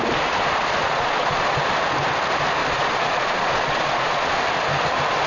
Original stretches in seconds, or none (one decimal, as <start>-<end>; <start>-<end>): 0.0-0.8; 1.6-2.6; 4.4-5.3